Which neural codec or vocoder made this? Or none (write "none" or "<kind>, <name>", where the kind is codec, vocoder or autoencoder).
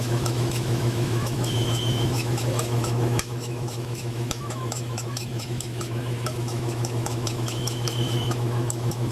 autoencoder, DAC-VAE